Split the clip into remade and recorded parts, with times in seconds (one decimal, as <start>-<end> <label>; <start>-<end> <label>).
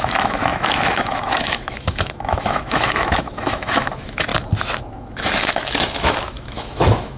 0.0-4.3 remade; 4.3-4.8 recorded; 4.8-7.2 remade